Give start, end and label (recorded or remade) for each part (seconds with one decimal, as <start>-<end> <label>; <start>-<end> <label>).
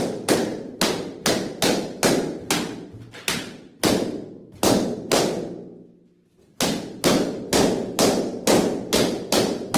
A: 0.0-9.8 recorded